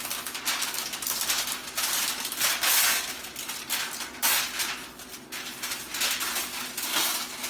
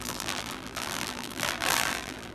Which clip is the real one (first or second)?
first